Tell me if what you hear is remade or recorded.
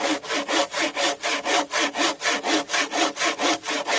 recorded